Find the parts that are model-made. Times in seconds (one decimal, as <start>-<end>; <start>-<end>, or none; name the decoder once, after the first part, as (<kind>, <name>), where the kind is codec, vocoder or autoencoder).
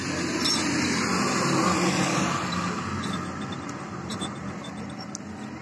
4.1-4.7 (vocoder, BigVGAN v2)